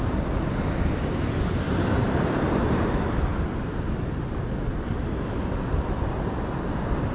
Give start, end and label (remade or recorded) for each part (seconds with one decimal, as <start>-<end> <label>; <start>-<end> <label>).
0.0-7.1 recorded